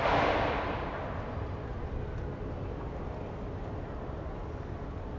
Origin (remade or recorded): recorded